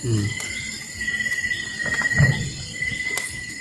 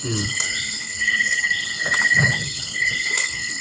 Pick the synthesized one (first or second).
second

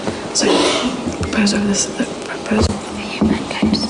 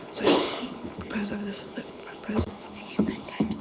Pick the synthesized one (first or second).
second